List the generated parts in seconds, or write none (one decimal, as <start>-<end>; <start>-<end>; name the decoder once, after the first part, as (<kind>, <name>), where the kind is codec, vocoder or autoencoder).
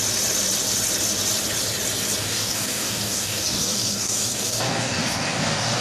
2.2-5.8 (codec, DAC)